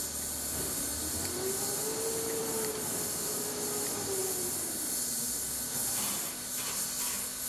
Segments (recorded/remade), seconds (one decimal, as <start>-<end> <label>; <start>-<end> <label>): 0.0-7.5 recorded